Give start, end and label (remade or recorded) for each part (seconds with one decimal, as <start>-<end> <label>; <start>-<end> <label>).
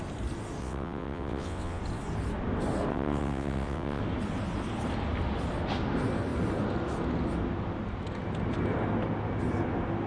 0.0-0.6 recorded; 0.6-1.8 remade; 1.8-2.9 recorded; 2.9-4.0 remade; 4.0-10.1 recorded